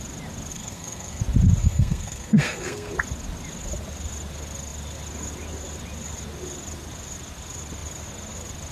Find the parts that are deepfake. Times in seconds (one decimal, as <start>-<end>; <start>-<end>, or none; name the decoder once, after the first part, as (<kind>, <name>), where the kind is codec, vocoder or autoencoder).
0.5-1.2 (codec, SNAC); 1.6-2.9